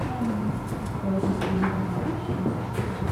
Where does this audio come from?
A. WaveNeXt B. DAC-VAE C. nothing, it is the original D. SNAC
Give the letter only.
C